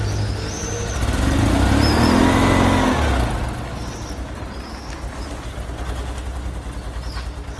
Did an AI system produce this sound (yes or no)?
no